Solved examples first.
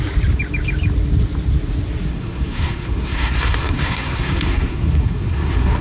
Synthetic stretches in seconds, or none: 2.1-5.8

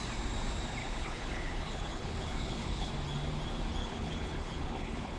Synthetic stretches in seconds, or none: 0.8-2.9; 3.8-5.2

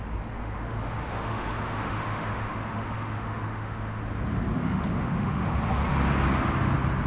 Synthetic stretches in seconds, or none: 0.4-4.0; 4.6-5.6

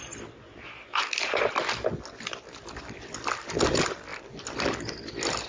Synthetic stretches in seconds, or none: 4.1-4.7

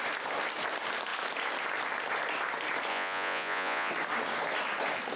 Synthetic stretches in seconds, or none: 2.9-3.9

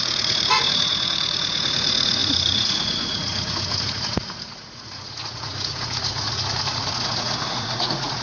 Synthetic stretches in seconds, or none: 0.0-8.2